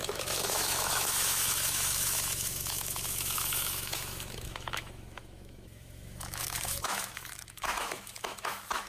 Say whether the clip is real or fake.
fake